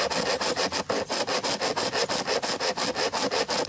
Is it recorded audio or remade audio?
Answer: recorded